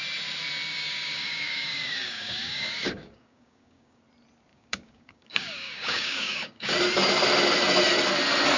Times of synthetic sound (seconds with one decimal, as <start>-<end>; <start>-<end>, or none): 0.7-4.0; 4.5-6.7